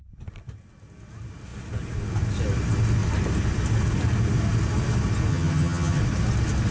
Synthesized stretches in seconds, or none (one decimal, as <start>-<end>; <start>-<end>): 5.3-6.0